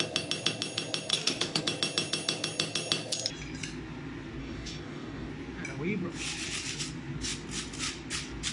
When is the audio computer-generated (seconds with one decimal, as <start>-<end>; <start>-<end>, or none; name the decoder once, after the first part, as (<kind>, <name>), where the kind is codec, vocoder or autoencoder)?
1.1-1.6 (codec, DAC); 4.4-5.3